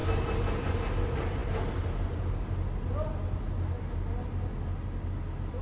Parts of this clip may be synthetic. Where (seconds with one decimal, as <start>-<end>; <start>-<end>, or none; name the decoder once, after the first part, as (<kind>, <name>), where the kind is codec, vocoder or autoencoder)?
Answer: none